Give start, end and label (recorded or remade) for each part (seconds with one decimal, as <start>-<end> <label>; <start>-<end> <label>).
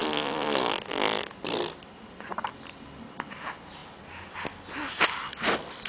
0.0-5.9 recorded